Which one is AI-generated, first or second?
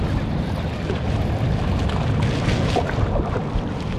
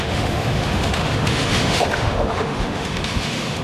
second